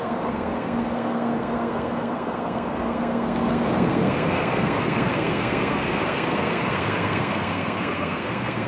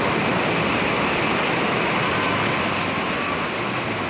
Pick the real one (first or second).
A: second